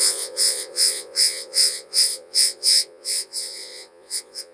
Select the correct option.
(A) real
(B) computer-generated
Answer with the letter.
B